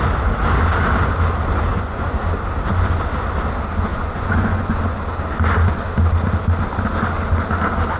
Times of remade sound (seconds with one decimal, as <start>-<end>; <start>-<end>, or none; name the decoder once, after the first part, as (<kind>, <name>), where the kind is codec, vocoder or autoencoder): 1.7-2.2 (vocoder, Vocos); 3.9-4.8